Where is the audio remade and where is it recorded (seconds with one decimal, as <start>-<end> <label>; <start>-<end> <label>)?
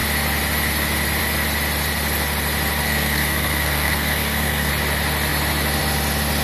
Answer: 0.0-2.8 recorded; 2.8-4.7 remade; 4.7-6.4 recorded